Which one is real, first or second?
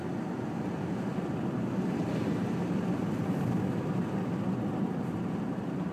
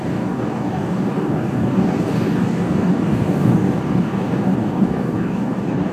first